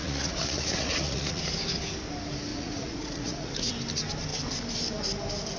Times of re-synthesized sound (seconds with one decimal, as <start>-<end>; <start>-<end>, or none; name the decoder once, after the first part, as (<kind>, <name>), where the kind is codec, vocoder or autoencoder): 0.0-1.4 (vocoder, Vocos); 2.5-3.7